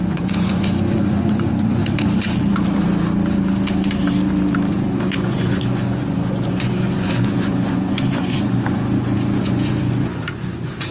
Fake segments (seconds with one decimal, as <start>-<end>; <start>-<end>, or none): 0.0-1.8; 4.7-10.9